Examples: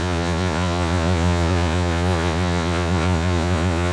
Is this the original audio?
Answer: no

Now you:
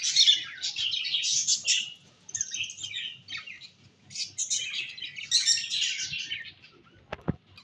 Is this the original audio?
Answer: yes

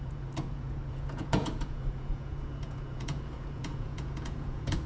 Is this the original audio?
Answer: no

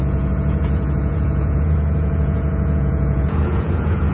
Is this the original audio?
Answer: no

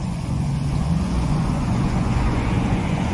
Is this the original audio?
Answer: no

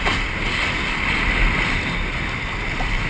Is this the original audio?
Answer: yes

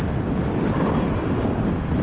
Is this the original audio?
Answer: yes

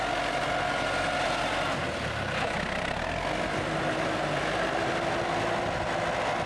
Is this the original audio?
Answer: yes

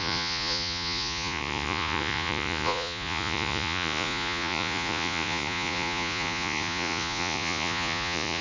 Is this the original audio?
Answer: no